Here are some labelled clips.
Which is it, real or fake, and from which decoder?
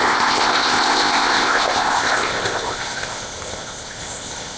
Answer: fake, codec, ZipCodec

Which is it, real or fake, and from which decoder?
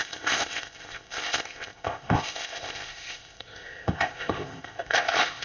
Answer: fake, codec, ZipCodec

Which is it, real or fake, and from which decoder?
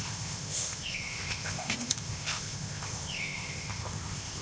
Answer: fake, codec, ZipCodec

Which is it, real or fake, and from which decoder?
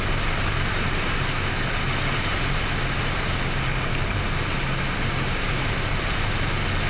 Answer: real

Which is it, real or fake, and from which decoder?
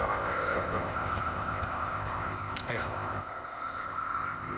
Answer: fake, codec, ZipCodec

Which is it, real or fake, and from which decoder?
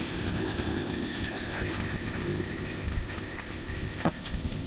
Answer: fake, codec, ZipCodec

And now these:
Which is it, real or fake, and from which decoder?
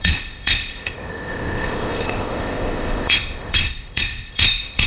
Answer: fake, codec, ZipCodec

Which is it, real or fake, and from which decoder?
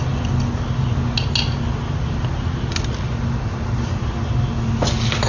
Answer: real